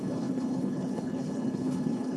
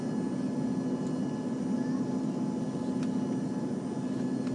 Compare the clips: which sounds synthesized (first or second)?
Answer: first